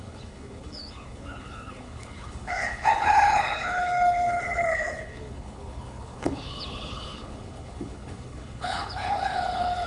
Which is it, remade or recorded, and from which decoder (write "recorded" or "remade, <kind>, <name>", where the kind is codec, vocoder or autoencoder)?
remade, codec, HILCodec